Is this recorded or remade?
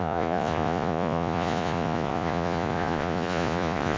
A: remade